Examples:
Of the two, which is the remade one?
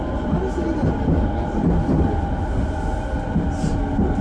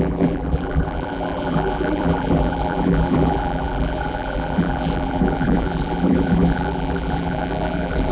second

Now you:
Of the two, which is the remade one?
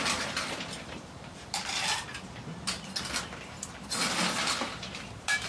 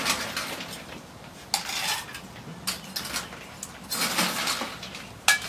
first